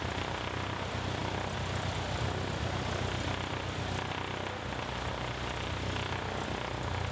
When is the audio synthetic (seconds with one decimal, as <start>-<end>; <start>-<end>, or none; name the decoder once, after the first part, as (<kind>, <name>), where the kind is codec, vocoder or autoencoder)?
none